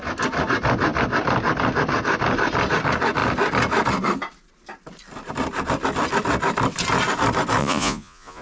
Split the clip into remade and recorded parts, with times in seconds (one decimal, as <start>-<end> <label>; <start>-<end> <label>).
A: 0.0-7.6 recorded; 7.6-8.4 remade